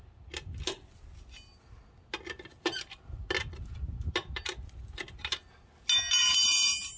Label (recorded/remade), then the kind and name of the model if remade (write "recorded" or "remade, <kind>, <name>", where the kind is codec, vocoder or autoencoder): recorded